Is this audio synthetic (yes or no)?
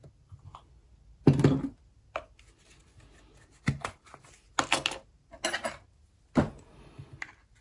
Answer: no